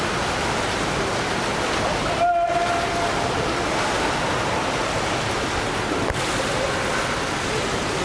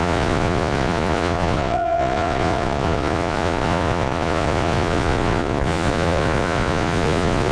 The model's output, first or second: second